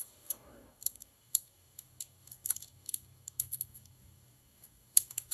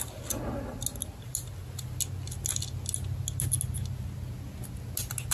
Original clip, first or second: second